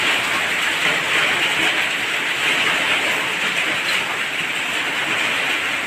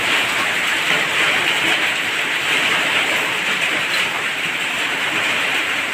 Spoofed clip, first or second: second